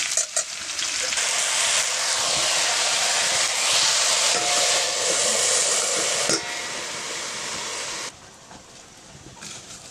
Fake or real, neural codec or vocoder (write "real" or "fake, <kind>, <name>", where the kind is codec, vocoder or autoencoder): real